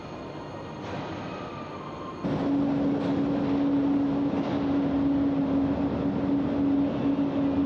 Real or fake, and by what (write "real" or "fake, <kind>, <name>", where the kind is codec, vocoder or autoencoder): real